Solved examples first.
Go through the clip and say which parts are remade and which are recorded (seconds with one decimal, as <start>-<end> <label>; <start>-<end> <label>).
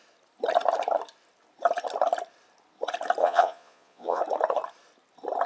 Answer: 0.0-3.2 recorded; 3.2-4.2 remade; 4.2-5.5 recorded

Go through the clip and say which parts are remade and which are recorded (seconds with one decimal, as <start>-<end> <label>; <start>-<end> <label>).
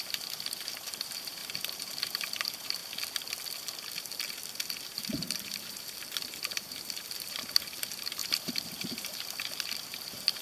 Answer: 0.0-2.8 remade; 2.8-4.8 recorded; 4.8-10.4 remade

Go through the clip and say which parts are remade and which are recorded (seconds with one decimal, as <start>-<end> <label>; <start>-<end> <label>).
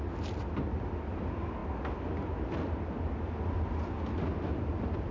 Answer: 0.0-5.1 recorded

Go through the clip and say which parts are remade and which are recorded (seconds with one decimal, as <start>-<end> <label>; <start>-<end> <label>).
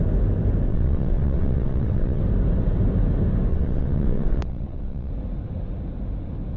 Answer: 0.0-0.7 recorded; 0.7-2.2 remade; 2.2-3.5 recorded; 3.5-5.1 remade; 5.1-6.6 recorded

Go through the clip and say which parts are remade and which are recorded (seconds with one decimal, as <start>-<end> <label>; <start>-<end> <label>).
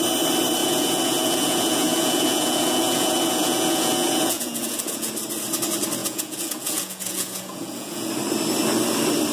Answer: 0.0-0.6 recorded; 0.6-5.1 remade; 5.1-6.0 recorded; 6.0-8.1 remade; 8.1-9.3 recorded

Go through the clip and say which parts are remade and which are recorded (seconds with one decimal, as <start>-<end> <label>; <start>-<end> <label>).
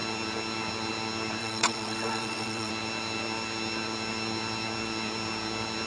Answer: 0.0-1.4 recorded; 1.4-2.7 remade; 2.7-5.9 recorded